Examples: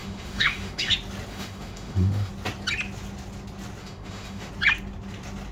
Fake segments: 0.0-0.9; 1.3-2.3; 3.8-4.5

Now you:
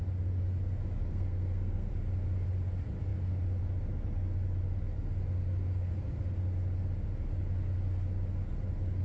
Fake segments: 1.1-1.9

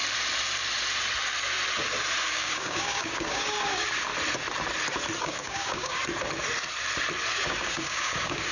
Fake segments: 2.3-4.1; 5.2-6.0; 7.3-8.5